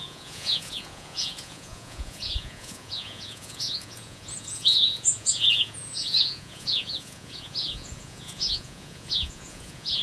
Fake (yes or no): yes